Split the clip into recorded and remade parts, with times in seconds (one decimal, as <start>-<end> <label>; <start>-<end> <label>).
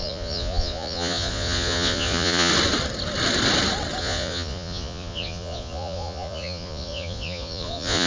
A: 0.0-2.5 remade; 2.5-4.0 recorded; 4.0-8.1 remade